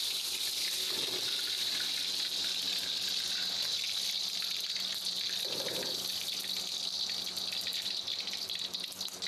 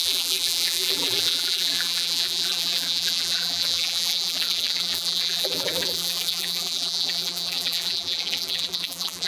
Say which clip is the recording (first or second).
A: first